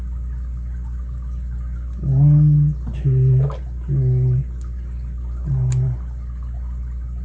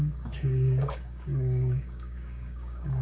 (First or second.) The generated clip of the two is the second